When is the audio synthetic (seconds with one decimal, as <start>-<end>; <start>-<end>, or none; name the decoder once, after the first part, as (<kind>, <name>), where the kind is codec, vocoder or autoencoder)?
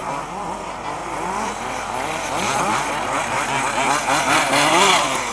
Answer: 0.0-1.0 (vocoder, BigVGAN v2); 4.2-5.3